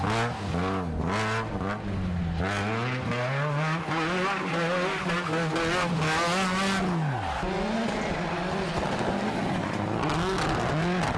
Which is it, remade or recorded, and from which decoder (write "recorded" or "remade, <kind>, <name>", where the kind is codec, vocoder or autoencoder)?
recorded